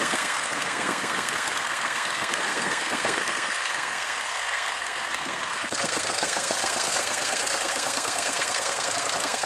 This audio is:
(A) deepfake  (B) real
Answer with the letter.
A